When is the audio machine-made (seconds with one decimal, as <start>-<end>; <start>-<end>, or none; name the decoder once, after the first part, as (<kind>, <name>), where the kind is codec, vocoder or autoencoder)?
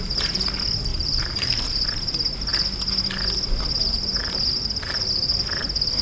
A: 0.9-1.6 (vocoder, BigVGAN v2)